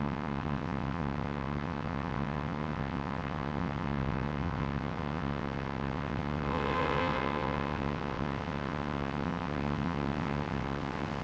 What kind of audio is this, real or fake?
fake